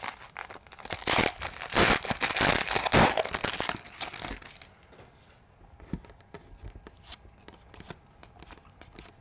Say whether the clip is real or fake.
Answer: real